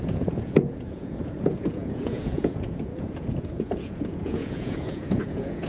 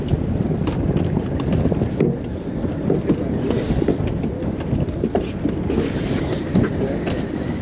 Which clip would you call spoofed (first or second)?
first